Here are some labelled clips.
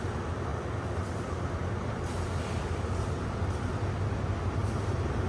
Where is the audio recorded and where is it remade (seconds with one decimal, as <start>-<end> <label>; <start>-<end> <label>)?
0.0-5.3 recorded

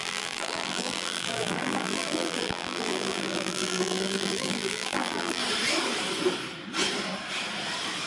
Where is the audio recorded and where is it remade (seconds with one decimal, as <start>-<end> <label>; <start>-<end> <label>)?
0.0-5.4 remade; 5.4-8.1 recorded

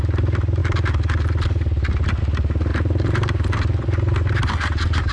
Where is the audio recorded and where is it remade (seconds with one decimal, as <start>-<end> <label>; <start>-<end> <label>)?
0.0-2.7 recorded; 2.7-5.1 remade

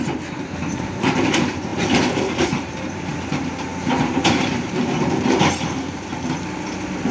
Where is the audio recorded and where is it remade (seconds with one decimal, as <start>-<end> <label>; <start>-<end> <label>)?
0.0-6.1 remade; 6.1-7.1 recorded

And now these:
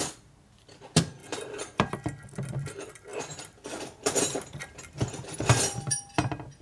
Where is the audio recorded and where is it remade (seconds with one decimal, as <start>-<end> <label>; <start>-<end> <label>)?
0.0-1.2 recorded; 1.2-1.9 remade; 1.9-3.1 recorded; 3.1-6.1 remade; 6.1-6.6 recorded

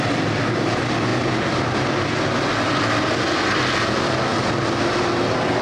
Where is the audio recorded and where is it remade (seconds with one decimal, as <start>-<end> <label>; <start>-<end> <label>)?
0.0-1.1 recorded; 1.1-2.5 remade; 2.5-5.6 recorded

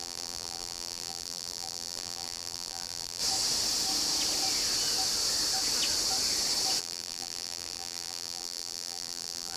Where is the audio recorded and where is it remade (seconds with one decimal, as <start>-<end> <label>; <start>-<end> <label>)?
0.0-3.2 remade; 3.2-6.8 recorded; 6.8-9.6 remade